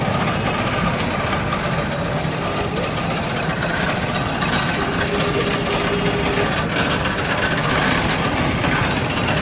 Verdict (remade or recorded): recorded